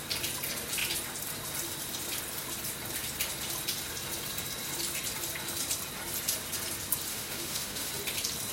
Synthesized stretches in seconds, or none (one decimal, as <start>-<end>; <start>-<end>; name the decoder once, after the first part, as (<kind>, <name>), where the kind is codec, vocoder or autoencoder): 7.1-7.9 (autoencoder, DAC-VAE)